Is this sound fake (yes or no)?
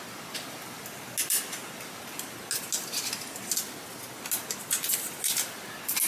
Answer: no